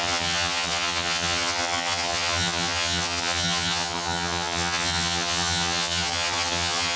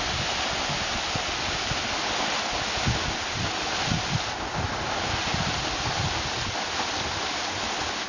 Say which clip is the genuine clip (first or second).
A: second